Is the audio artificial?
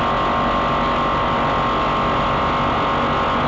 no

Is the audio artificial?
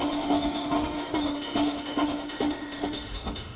yes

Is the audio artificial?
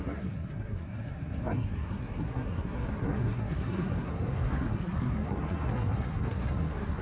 yes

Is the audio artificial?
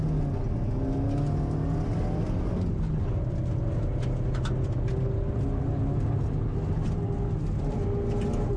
no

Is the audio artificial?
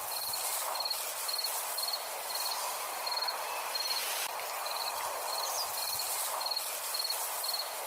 no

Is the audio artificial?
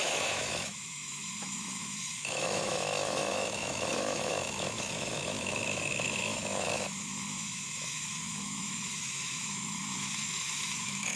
yes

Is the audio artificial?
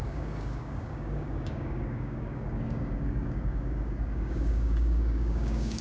yes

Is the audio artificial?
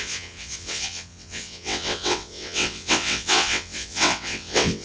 yes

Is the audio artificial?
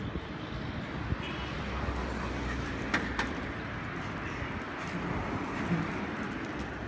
no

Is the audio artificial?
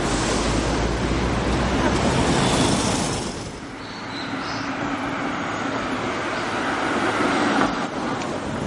no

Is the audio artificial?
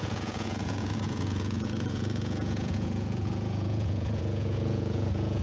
yes